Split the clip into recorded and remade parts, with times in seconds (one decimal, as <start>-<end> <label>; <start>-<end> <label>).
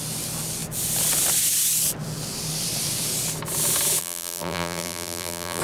0.0-4.0 recorded; 4.0-5.6 remade